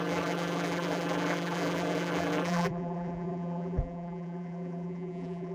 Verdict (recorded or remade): remade